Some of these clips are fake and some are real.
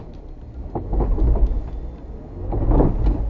real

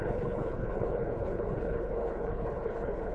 fake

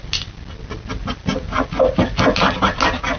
real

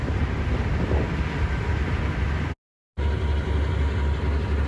real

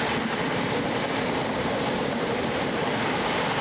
real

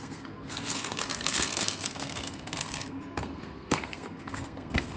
fake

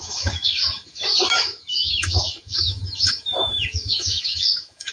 fake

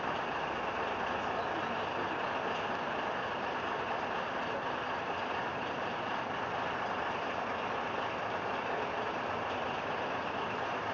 real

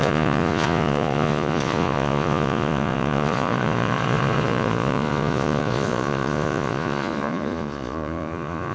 fake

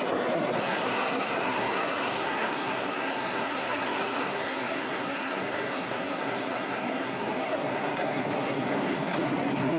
fake